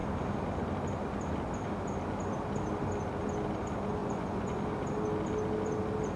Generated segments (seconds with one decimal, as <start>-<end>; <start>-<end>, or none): 4.0-4.6